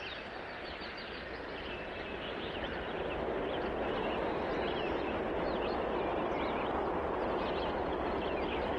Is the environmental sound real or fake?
real